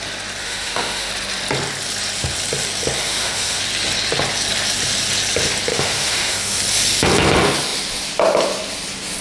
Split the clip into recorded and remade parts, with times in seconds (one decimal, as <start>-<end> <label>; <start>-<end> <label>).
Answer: 0.0-0.4 recorded; 0.4-1.1 remade; 1.1-3.0 recorded; 3.0-3.6 remade; 3.6-5.7 recorded; 5.7-6.6 remade; 6.6-9.2 recorded